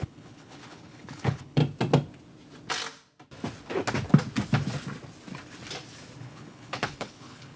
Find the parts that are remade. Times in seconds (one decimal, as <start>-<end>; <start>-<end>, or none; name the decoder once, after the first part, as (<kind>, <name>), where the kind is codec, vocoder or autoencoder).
0.0-1.6 (codec, HILCodec); 6.2-7.6

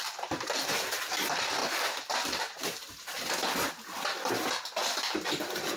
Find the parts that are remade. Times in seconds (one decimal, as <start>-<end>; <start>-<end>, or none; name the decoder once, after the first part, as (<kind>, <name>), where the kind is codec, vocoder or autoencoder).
0.0-1.6 (vocoder, BigVGAN v2); 2.1-2.8; 5.0-5.8

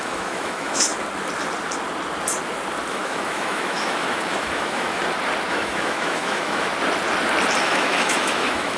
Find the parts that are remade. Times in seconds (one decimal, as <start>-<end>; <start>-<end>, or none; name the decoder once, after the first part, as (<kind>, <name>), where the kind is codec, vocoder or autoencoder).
0.0-0.9 (autoencoder, DAC-VAE); 2.9-5.0; 5.5-6.7; 7.6-8.8

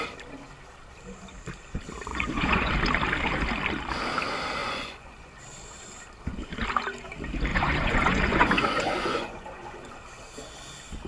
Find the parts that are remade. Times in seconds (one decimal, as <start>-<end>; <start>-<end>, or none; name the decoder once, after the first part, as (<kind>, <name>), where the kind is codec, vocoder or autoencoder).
2.1-2.7 (vocoder, Vocos); 4.6-5.4; 7.5-9.9

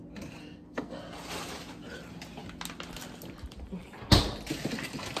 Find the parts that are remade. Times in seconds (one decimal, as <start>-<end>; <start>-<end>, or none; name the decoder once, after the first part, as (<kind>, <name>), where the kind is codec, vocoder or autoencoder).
0.4-1.0 (codec, SNAC)

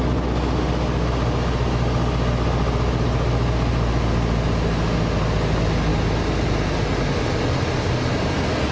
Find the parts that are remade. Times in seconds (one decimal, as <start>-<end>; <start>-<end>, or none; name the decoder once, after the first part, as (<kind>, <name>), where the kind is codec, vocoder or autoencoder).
none

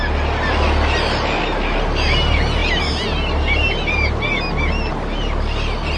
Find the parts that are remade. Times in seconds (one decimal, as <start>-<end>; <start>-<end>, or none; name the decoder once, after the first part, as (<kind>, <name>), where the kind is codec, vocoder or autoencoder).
none

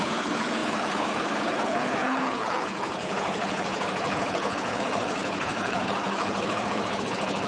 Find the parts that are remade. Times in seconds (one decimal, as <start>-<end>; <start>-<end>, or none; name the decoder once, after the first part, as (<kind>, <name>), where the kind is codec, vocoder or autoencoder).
0.0-7.5 (codec, HILCodec)